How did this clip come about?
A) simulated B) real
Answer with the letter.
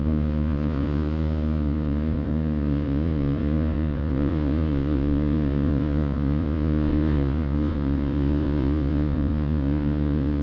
A